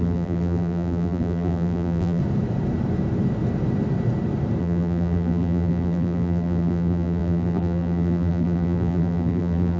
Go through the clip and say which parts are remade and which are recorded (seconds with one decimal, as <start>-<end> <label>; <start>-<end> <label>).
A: 0.0-2.2 remade; 2.2-4.6 recorded; 4.6-9.8 remade